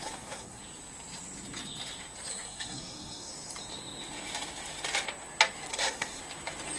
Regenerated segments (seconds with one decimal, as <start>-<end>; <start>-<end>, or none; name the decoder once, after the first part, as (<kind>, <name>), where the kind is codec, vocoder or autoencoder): 0.0-0.6 (codec, SNAC); 2.3-3.3; 5.7-6.2